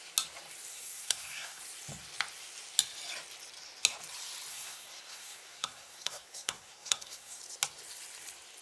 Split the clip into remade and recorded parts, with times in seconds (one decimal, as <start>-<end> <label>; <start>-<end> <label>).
0.0-0.7 recorded; 0.7-1.6 remade; 1.6-4.5 recorded; 4.5-7.4 remade; 7.4-8.6 recorded